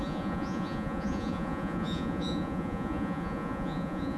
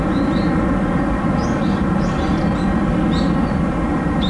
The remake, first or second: first